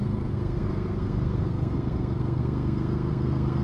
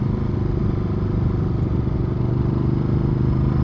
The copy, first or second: first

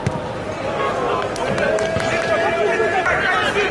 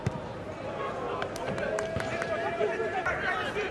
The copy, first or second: second